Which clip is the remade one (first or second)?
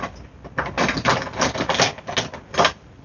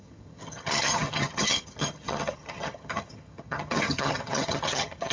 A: second